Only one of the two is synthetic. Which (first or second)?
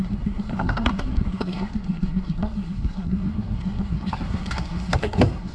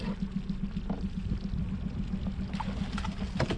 first